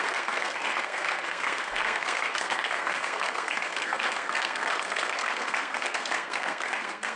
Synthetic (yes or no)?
yes